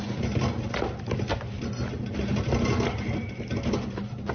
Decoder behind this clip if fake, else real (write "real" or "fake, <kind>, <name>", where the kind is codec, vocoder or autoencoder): real